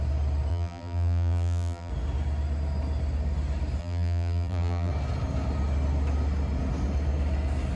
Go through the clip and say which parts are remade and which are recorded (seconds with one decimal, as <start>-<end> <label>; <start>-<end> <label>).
0.0-0.5 recorded; 0.5-1.9 remade; 1.9-3.8 recorded; 3.8-4.9 remade; 4.9-7.8 recorded